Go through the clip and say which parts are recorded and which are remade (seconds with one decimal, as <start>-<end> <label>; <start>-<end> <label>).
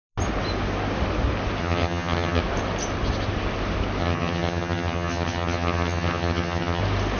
0.0-1.6 recorded; 1.6-2.4 remade; 2.4-4.0 recorded; 4.0-6.8 remade; 6.8-7.2 recorded